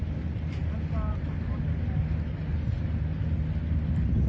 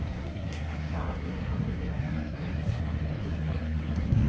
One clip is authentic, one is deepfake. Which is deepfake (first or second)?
second